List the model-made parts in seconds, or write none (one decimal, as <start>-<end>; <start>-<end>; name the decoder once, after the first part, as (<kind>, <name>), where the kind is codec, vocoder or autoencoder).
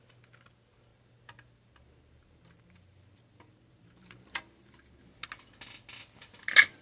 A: 0.9-5.0 (vocoder, BigVGAN v2)